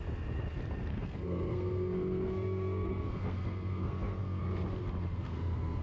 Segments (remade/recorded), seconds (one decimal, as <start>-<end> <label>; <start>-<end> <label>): 0.0-0.9 recorded; 0.9-4.4 remade; 4.4-5.2 recorded; 5.2-5.8 remade